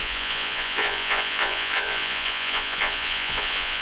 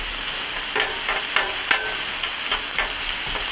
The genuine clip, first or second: second